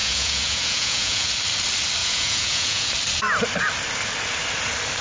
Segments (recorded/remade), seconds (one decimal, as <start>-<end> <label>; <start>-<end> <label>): 0.0-1.3 remade; 1.3-2.0 recorded; 2.0-2.9 remade; 2.9-5.0 recorded